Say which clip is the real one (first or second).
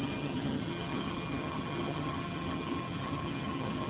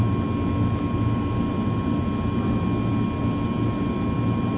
second